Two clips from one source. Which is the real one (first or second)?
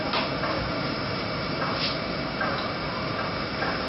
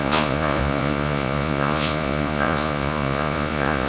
first